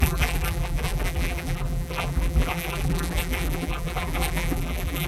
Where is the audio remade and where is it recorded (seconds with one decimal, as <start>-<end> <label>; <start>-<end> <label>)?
0.0-5.1 remade